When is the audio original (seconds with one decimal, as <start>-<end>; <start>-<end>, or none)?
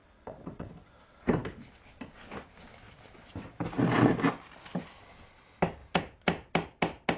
0.7-7.2